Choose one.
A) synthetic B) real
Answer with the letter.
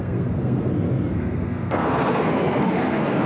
A